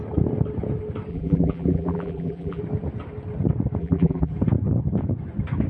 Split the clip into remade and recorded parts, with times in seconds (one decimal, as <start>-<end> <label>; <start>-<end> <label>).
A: 0.0-1.1 recorded; 1.1-2.6 remade; 2.6-3.8 recorded; 3.8-4.3 remade; 4.3-5.7 recorded